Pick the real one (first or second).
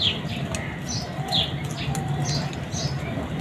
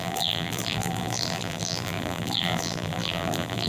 first